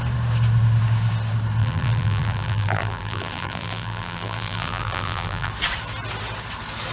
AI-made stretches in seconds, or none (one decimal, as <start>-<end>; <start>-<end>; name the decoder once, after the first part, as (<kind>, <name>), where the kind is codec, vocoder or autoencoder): 1.6-5.5 (vocoder, BigVGAN v2)